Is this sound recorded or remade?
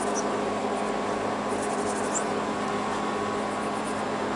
recorded